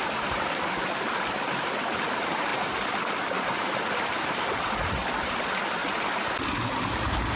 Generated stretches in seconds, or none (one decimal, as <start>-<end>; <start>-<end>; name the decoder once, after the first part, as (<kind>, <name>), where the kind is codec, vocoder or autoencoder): 0.0-2.5 (vocoder, BigVGAN v2); 4.9-5.8